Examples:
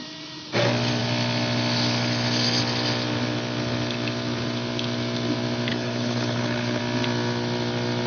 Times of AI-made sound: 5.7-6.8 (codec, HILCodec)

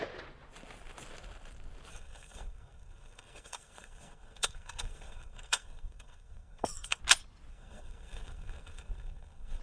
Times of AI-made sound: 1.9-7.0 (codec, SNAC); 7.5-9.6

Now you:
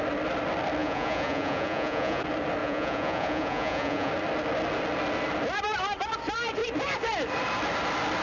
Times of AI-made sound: 0.8-2.2 (vocoder, Vocos); 2.6-4.1

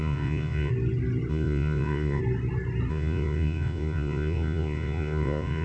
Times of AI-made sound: 0.0-0.7 (vocoder, Vocos); 1.3-2.2; 2.9-5.6